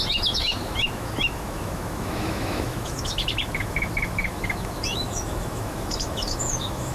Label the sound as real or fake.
fake